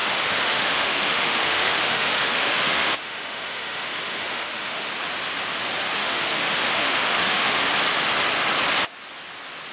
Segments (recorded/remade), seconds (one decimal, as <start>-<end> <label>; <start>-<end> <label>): 0.0-4.9 remade; 4.9-6.0 recorded; 6.0-7.6 remade; 7.6-9.7 recorded